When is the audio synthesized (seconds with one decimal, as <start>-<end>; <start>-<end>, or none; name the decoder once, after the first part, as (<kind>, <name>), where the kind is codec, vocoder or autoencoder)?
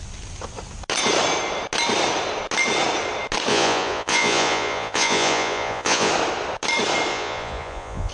3.5-6.1 (vocoder, Vocos); 7.1-8.1